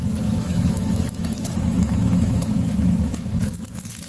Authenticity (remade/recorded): remade